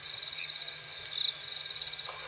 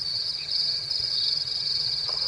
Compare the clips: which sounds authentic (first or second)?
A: first